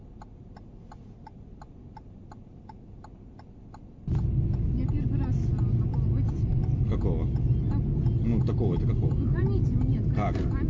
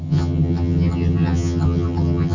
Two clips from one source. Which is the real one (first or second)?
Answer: first